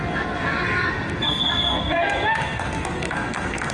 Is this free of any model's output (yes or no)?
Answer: no